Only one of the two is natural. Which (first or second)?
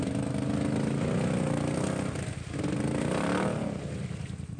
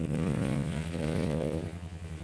first